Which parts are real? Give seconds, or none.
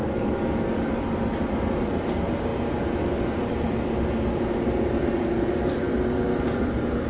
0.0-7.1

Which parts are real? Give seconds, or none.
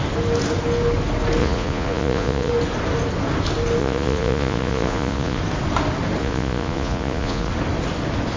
0.0-1.4; 2.5-3.8; 5.4-6.2; 7.5-8.4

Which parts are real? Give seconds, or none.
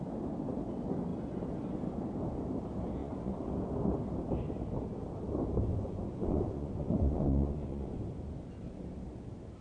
0.0-3.0; 3.5-5.7; 8.0-9.6